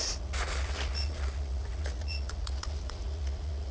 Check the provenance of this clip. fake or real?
fake